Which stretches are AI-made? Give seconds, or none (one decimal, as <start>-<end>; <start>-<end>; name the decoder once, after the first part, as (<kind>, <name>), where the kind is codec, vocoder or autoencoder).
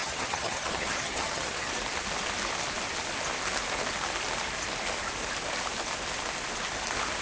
0.0-1.7 (vocoder, HiFi-GAN)